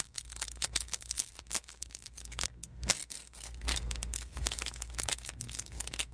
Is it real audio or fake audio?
fake